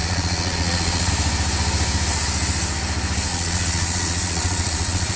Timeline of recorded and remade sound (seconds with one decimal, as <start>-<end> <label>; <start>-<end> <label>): 0.0-1.1 remade; 1.1-3.3 recorded; 3.3-5.2 remade